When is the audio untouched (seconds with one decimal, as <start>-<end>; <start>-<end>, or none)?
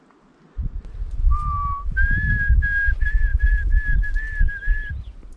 0.0-5.4